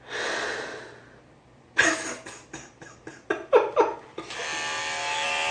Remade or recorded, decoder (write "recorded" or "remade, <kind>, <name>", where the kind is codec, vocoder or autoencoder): recorded